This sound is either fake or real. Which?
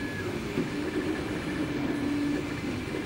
real